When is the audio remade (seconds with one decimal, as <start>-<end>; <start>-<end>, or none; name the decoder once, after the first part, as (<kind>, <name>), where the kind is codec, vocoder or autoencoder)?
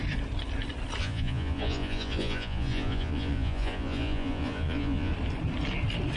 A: 1.0-5.1 (vocoder, Vocos)